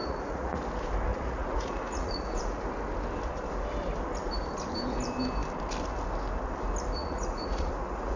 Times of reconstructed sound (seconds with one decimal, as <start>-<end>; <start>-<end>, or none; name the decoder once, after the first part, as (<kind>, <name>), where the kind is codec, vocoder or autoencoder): 0.0-0.6 (vocoder, Vocos); 1.1-2.7; 7.0-8.2